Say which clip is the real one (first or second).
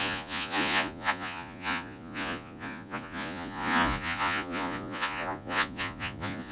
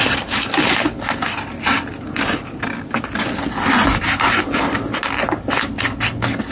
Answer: second